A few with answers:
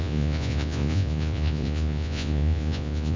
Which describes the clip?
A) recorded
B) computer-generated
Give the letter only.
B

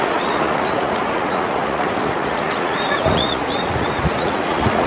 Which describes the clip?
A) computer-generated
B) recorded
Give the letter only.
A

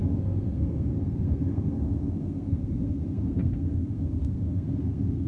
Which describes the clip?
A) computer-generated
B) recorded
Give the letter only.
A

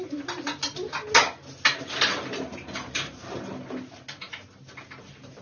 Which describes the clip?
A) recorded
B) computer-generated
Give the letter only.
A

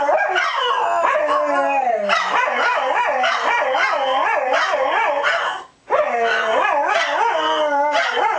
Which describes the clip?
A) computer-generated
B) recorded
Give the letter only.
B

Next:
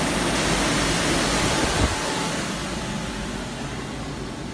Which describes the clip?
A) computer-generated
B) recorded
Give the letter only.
B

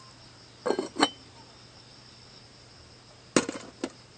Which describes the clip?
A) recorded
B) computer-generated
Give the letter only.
A